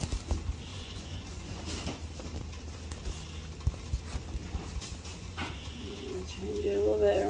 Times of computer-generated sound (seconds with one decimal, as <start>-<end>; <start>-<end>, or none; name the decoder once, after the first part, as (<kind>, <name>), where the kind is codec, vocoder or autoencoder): 0.7-1.6 (vocoder, Vocos); 5.1-6.1